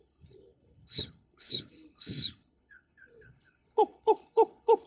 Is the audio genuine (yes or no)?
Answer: no